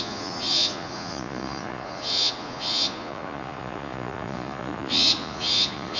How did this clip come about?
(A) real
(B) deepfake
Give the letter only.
B